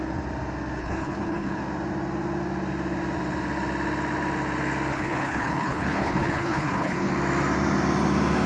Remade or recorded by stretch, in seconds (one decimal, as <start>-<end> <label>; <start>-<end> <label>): 0.0-0.8 recorded; 0.8-1.6 remade; 1.6-4.9 recorded; 4.9-7.1 remade; 7.1-8.5 recorded